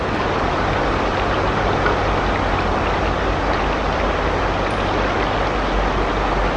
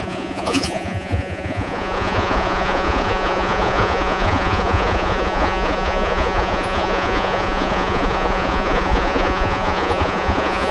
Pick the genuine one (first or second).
first